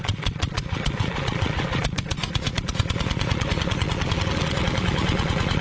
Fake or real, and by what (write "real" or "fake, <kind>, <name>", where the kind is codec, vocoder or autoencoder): fake, vocoder, Vocos